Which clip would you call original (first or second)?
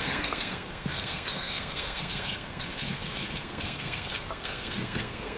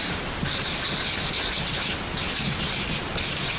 second